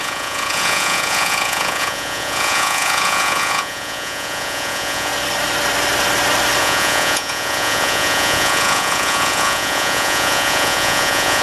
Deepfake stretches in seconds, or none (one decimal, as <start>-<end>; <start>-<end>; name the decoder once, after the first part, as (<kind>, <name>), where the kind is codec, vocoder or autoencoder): 0.0-5.1 (vocoder, Vocos); 6.6-11.4